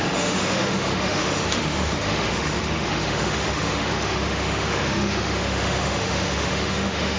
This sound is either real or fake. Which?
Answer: fake